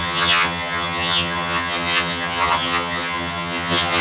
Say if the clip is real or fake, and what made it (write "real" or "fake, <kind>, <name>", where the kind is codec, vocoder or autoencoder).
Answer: fake, vocoder, HiFi-GAN